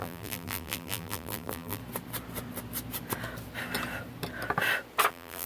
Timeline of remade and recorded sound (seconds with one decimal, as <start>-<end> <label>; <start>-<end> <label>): 0.0-1.8 remade; 1.8-5.1 recorded; 5.1-5.5 remade